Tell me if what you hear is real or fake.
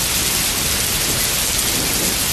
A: real